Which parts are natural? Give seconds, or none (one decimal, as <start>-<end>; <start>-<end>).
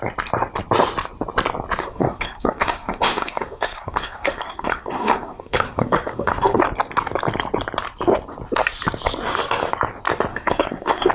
0.0-1.8; 6.6-10.3